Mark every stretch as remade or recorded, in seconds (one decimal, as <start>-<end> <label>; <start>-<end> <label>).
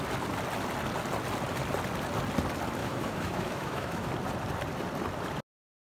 0.0-2.8 recorded; 2.8-4.1 remade; 4.1-5.9 recorded